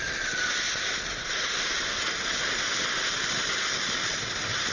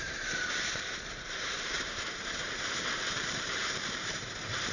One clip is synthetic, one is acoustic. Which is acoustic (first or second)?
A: first